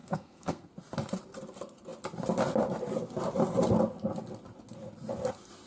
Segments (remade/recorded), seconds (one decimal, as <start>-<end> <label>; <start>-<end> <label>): 0.0-0.7 remade; 0.7-5.7 recorded